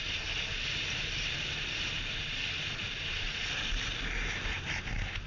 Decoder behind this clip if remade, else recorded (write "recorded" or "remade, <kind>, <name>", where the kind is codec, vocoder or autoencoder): recorded